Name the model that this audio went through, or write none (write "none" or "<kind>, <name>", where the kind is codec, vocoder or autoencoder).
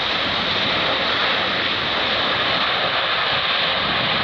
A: none